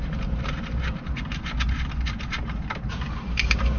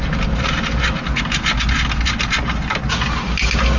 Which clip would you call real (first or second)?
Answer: second